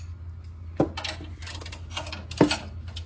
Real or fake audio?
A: real